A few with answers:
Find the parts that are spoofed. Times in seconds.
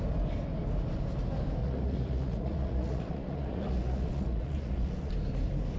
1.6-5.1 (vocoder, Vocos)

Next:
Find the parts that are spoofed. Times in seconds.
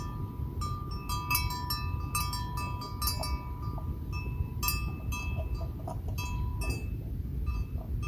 none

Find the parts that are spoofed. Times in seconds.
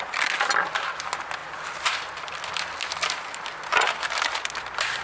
none